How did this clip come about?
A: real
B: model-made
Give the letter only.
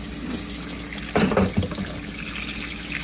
A